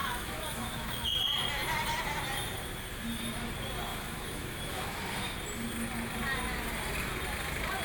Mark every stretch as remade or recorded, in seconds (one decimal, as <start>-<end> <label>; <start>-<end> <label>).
0.0-1.2 remade; 1.2-3.9 recorded; 3.9-5.0 remade; 5.0-7.8 recorded